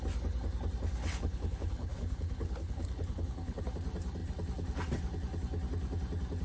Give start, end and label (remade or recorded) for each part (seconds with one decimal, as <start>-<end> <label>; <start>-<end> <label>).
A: 0.0-1.0 recorded; 1.0-3.6 remade; 3.6-6.4 recorded